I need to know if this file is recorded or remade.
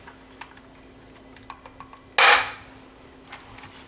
recorded